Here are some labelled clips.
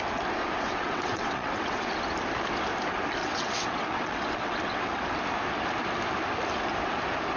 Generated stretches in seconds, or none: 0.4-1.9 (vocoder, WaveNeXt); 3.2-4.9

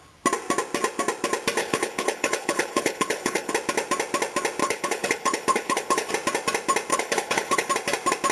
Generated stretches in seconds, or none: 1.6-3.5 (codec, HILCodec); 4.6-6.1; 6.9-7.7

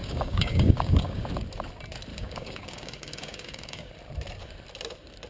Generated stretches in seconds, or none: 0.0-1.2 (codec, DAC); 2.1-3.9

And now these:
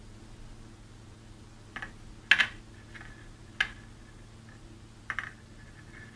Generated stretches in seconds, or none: none